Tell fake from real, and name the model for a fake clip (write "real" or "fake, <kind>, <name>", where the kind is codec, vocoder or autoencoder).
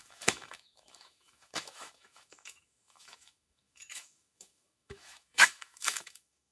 fake, autoencoder, DAC-VAE